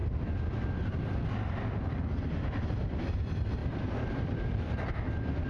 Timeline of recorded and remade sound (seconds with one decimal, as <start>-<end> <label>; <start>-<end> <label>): 0.0-3.6 recorded; 3.6-4.9 remade; 4.9-5.5 recorded